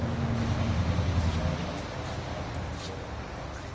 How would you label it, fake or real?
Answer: real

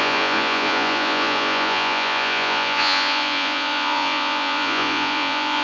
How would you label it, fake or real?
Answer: fake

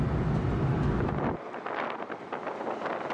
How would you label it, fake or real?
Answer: real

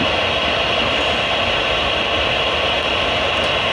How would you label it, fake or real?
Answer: real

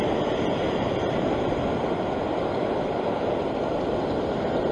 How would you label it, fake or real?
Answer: real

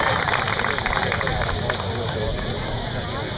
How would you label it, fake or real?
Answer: real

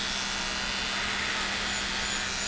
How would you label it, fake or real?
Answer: real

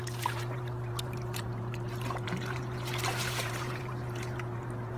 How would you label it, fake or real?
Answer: fake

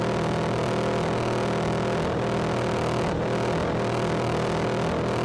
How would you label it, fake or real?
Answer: real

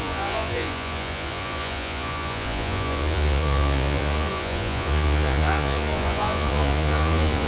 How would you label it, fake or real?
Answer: fake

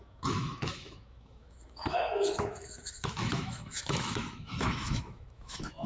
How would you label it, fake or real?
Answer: fake